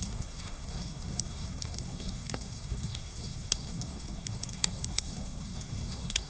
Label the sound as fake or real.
fake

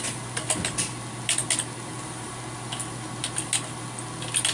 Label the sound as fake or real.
real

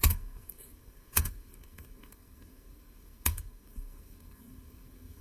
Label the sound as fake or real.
fake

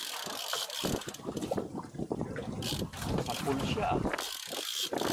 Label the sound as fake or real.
real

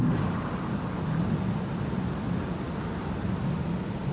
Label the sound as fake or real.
real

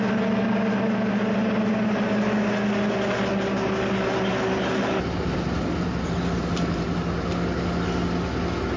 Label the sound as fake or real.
real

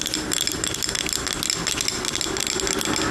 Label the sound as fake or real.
real